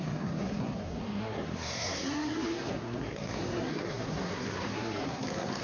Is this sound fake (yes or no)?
yes